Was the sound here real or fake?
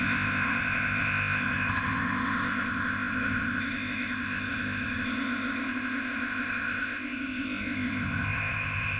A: fake